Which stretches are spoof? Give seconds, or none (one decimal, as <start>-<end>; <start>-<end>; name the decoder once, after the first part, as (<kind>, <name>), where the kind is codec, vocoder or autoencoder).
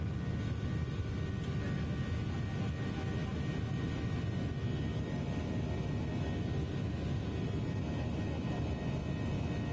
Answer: none